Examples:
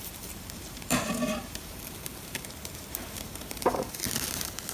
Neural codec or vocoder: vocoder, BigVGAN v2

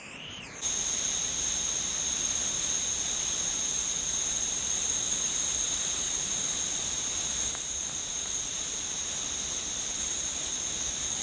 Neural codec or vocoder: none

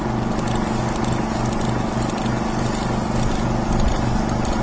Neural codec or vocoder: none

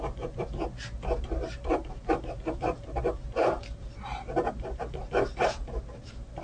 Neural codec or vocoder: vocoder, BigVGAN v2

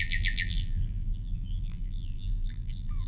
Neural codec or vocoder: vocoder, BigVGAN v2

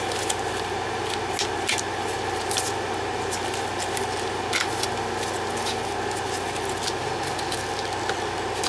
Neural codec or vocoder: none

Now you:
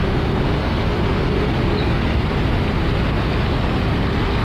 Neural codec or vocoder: none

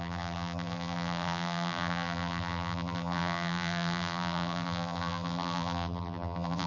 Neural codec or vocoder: vocoder, BigVGAN v2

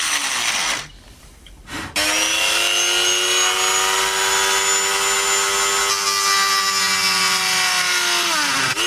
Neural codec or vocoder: none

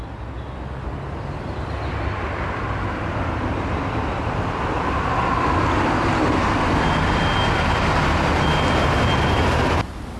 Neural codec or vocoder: none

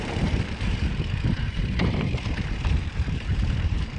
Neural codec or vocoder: vocoder, BigVGAN v2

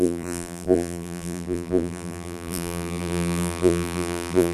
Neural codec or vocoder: vocoder, BigVGAN v2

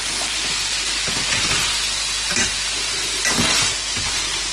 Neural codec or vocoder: none